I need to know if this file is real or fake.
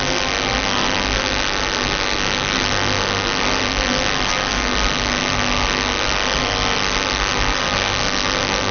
fake